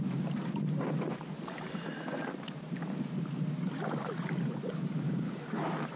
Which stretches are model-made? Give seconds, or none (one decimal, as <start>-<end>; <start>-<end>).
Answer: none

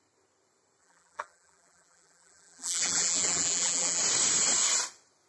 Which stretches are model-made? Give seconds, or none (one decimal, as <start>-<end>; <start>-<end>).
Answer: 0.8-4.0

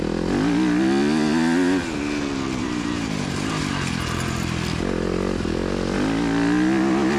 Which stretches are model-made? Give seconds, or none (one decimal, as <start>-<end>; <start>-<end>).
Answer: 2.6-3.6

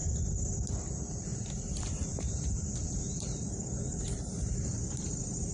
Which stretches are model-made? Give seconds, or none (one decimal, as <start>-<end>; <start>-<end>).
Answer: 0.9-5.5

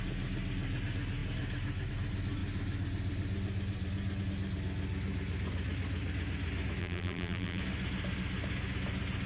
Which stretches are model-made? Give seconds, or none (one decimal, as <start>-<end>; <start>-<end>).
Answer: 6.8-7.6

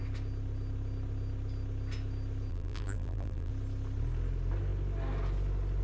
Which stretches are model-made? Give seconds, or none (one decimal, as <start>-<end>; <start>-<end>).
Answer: 2.5-3.5

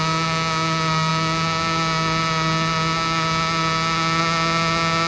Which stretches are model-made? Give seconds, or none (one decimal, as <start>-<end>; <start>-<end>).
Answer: none

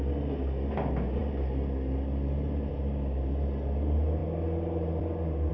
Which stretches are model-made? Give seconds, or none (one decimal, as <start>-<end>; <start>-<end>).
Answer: none